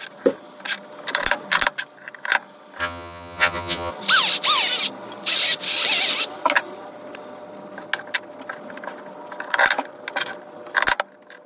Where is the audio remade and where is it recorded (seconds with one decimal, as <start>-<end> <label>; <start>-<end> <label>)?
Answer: 0.0-2.8 recorded; 2.8-3.9 remade; 3.9-11.5 recorded